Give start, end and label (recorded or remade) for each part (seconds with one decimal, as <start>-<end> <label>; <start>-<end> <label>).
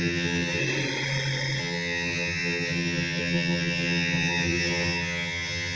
0.0-0.6 remade; 0.6-1.6 recorded; 1.6-5.8 remade